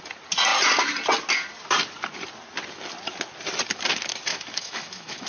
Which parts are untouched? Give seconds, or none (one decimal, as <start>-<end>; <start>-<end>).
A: 0.0-4.3